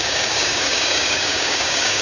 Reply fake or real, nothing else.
fake